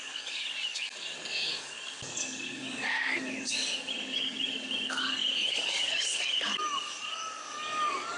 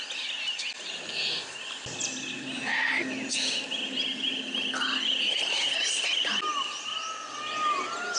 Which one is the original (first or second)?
second